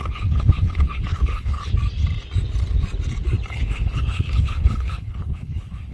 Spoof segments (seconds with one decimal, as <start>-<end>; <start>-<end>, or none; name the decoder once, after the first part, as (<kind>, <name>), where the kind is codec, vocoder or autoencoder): 0.0-1.7 (codec, HILCodec); 3.5-5.9